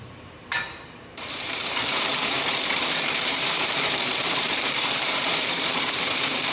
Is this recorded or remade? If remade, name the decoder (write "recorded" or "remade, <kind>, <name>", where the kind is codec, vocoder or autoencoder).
remade, vocoder, BigVGAN v2